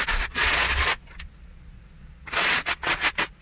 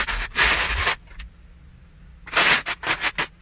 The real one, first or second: second